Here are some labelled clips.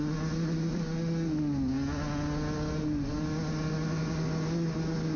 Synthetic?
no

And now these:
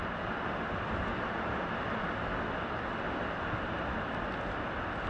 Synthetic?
no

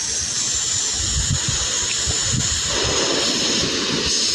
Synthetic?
no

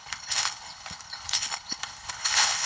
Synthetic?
yes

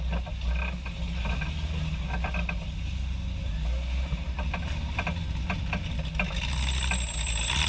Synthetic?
no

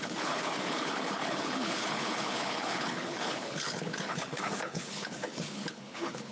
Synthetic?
yes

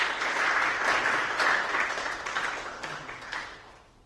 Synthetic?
no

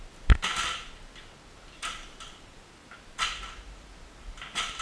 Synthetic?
no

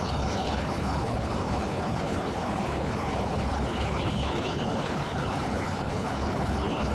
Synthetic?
yes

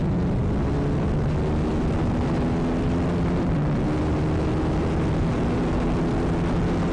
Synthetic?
no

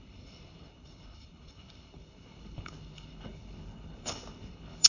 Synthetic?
yes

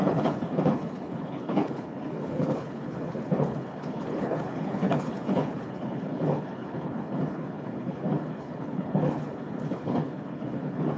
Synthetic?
yes